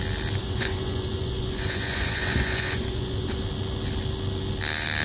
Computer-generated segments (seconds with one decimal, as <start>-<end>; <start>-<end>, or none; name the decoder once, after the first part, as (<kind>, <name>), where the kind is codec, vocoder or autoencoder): 0.4-3.4 (vocoder, Vocos)